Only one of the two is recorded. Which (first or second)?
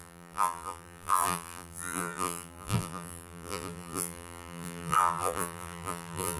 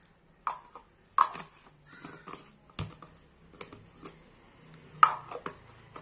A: second